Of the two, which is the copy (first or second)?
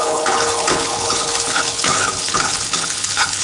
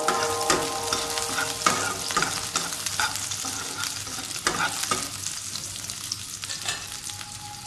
first